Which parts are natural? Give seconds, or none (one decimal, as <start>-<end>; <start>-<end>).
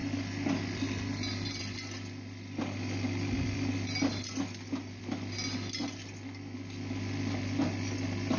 0.0-8.4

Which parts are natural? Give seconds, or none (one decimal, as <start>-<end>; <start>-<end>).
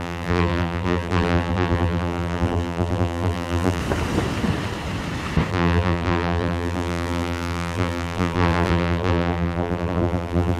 3.8-5.5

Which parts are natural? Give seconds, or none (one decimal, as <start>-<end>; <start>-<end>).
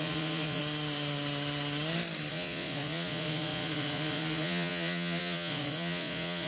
0.6-2.3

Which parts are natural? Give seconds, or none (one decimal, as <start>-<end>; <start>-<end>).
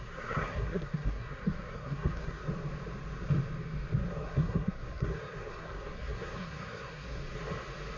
2.4-4.1; 7.2-8.0